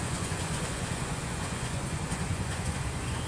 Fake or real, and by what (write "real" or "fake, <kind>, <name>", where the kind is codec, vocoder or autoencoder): fake, vocoder, Vocos